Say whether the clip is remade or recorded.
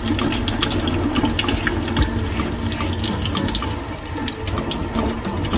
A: recorded